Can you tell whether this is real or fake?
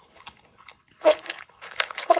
fake